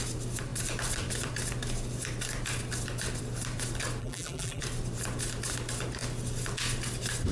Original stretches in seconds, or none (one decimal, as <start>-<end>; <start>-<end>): 0.0-4.0; 4.6-7.3